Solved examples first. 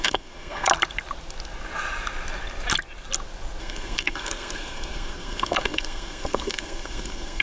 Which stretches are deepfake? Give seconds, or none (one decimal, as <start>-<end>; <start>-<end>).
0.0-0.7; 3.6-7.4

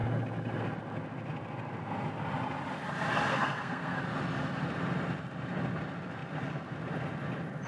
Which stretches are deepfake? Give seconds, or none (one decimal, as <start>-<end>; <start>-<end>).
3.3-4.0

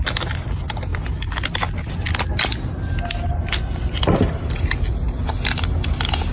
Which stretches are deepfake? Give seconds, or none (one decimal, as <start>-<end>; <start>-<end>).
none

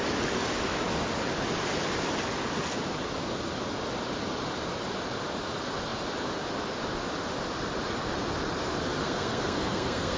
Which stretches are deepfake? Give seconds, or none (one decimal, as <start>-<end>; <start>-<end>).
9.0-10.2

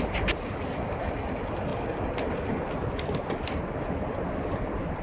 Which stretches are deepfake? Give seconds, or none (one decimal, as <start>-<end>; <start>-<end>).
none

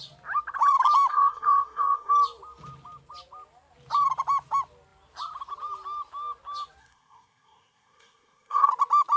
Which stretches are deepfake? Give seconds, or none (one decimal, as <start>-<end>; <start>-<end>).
1.1-2.1; 6.8-8.7

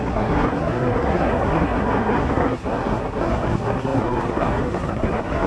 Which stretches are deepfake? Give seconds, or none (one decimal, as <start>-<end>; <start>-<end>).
0.0-5.5